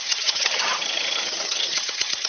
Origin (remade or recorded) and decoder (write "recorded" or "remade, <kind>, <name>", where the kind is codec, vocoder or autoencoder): remade, vocoder, HiFi-GAN